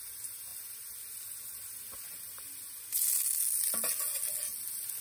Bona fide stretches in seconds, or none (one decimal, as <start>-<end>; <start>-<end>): 0.0-5.0